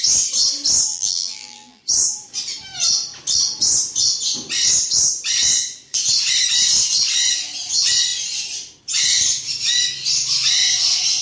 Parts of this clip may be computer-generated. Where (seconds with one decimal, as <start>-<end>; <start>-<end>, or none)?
0.9-1.8

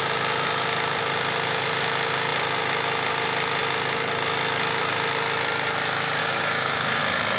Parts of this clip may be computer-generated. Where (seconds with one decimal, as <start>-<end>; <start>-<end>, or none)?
6.2-7.0

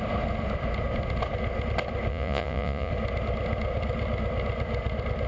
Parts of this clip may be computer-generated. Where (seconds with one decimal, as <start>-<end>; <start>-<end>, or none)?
2.1-2.9

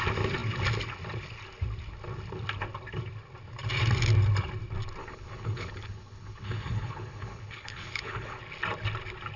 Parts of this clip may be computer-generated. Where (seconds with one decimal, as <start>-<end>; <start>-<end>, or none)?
5.0-8.4

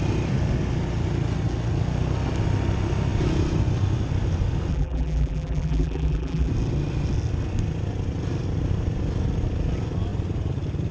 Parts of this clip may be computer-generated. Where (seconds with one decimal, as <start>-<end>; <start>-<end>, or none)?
4.7-6.5

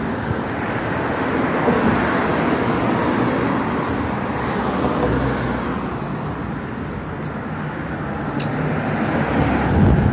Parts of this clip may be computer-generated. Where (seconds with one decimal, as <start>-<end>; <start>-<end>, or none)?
none

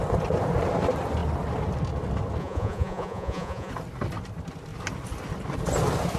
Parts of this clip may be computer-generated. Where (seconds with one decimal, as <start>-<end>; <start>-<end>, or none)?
2.4-3.7